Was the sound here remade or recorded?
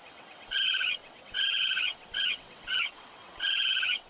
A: remade